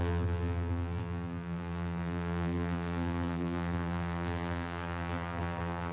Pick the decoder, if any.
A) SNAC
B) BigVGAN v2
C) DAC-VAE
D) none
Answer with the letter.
B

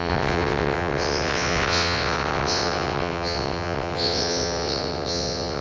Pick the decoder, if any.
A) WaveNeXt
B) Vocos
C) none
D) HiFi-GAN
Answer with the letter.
A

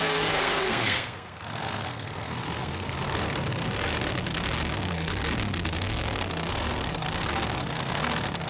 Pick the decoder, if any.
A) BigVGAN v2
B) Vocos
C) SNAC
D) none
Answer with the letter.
C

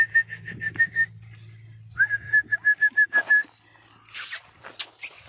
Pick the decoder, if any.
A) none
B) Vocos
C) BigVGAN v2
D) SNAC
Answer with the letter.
A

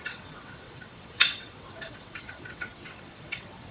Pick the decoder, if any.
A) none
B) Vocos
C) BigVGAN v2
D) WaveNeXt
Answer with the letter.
D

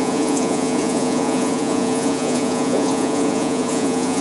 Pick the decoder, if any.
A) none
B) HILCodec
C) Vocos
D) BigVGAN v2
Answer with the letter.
C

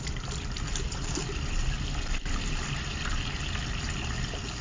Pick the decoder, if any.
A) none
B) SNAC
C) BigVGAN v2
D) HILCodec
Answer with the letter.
A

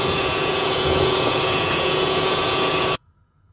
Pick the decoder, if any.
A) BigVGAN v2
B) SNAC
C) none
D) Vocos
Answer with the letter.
D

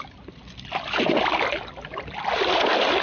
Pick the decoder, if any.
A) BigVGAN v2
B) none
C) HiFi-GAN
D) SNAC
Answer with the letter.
B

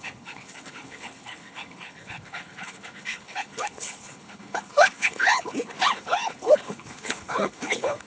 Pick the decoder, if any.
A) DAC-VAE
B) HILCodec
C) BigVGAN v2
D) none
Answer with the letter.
B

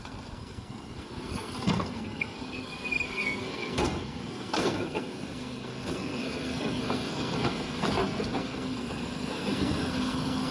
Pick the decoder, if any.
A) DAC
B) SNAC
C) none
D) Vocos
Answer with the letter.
B